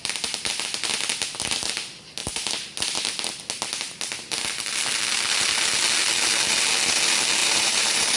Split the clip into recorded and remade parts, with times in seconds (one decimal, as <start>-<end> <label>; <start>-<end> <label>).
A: 0.0-7.4 recorded; 7.4-8.2 remade